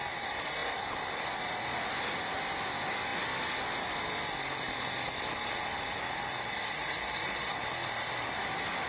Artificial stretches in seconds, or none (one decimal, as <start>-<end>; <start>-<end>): none